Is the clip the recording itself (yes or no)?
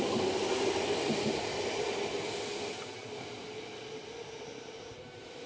yes